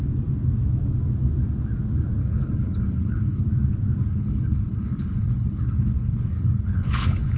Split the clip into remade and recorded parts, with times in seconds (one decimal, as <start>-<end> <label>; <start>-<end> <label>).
0.0-2.2 recorded; 2.2-3.4 remade; 3.4-4.0 recorded; 4.0-7.4 remade